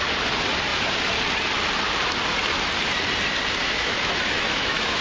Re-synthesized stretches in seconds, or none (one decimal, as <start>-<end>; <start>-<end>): 3.6-5.0